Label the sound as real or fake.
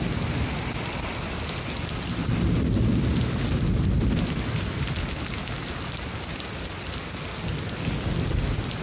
real